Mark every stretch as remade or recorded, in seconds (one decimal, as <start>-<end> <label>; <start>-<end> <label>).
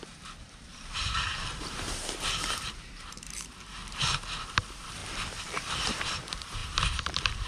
0.0-3.8 remade; 3.8-4.4 recorded; 4.4-5.0 remade; 5.0-5.6 recorded; 5.6-7.5 remade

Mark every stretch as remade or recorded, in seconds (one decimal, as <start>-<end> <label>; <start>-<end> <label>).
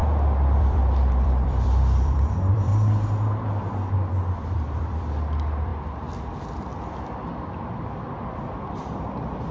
0.0-0.6 recorded; 0.6-2.7 remade; 2.7-3.9 recorded; 3.9-5.7 remade; 5.7-6.3 recorded; 6.3-9.5 remade